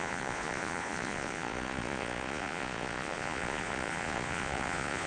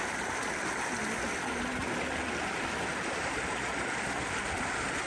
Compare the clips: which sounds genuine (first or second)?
second